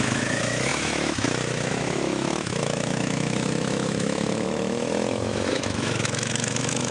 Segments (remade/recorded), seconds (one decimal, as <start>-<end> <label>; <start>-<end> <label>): 0.0-6.9 remade